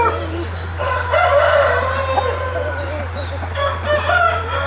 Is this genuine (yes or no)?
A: yes